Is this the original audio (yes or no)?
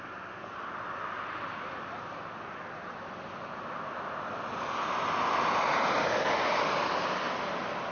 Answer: yes